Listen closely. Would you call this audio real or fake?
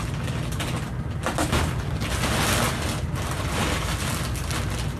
real